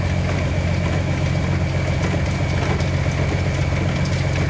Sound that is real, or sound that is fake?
real